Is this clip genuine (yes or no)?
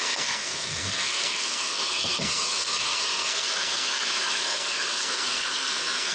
no